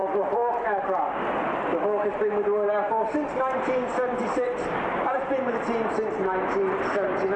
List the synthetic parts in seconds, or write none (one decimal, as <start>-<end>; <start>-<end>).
none